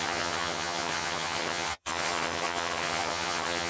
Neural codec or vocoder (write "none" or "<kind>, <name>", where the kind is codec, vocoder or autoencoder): vocoder, HiFi-GAN